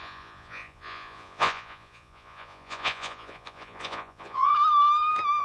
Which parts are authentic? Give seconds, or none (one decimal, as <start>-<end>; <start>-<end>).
4.5-5.4